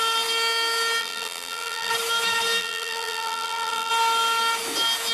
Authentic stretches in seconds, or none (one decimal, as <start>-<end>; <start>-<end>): 0.0-1.0; 1.9-2.6; 3.9-5.1